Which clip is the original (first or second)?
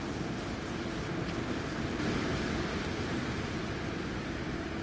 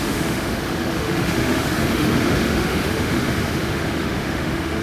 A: first